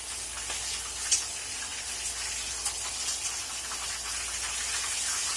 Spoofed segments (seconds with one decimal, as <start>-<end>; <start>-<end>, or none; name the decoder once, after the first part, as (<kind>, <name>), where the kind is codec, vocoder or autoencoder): none